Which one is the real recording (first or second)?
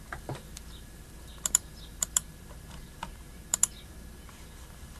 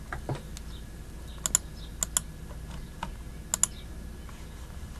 second